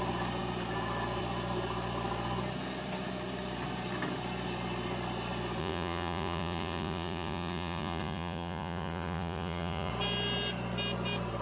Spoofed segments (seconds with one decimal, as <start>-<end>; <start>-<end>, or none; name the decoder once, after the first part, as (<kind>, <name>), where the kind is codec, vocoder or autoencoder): 5.6-9.9 (vocoder, Vocos)